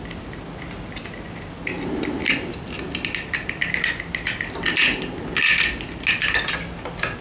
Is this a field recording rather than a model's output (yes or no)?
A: yes